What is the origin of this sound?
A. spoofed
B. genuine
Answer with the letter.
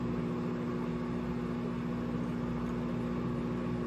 B